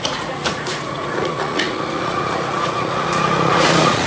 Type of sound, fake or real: fake